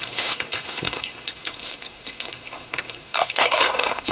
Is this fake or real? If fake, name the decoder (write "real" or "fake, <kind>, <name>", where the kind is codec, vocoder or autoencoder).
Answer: fake, codec, SNAC